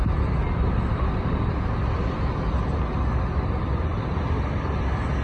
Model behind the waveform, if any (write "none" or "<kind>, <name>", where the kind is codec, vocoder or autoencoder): none